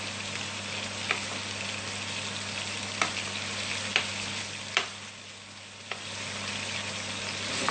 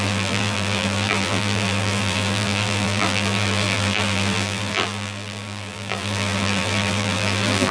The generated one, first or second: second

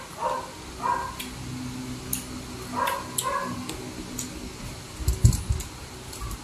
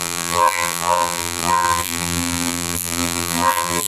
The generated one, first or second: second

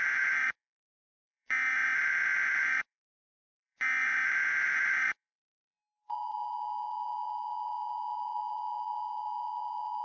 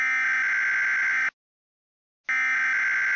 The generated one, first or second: first